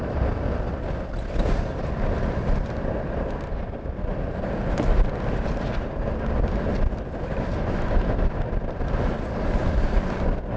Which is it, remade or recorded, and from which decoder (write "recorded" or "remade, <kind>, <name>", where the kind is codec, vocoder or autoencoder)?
recorded